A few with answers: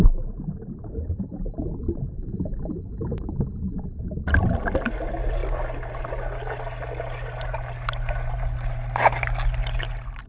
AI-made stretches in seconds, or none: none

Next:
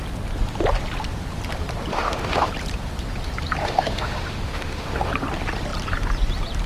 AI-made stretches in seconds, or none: 1.9-2.5 (autoencoder, DAC-VAE); 3.6-5.1

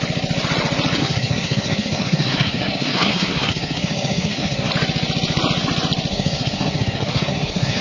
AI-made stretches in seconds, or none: 1.0-4.7 (codec, SNAC); 6.1-7.8